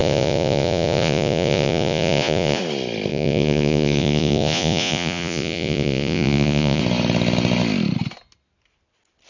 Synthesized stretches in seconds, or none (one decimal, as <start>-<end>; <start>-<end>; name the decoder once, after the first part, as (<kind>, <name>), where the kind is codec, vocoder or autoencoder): 0.0-2.6 (vocoder, Vocos); 3.1-6.8